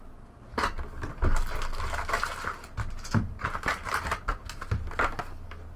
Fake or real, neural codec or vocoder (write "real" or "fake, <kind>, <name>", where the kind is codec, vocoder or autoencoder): real